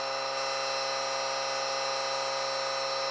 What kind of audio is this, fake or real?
real